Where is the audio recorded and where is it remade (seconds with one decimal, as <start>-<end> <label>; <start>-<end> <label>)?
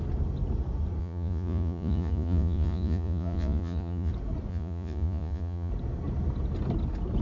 0.0-1.0 recorded; 1.0-4.1 remade; 4.1-4.5 recorded; 4.5-5.7 remade; 5.7-7.2 recorded